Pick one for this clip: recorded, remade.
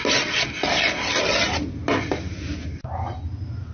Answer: recorded